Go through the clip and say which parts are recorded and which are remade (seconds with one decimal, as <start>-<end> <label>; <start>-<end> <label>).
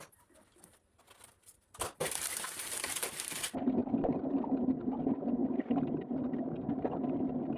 0.0-7.6 recorded